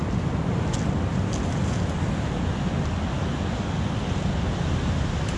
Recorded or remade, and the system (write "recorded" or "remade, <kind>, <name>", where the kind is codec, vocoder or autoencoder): recorded